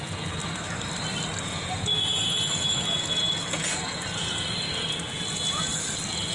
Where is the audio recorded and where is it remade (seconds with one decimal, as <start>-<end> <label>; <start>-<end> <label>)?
0.0-0.4 remade; 0.4-1.4 recorded; 1.4-5.7 remade; 5.7-6.3 recorded